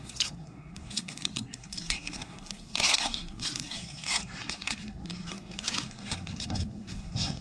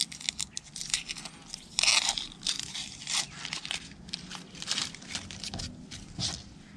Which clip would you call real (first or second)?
second